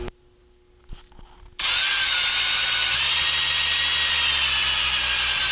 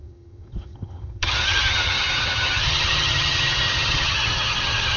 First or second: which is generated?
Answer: second